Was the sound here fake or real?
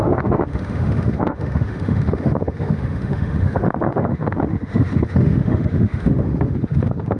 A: fake